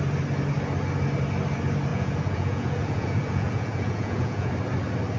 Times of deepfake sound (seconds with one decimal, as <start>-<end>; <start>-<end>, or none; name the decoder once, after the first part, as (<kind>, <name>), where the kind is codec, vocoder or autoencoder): 1.9-4.5 (vocoder, Vocos)